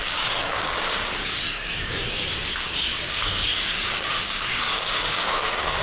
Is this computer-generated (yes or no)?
yes